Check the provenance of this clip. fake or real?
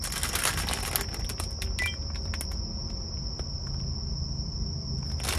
real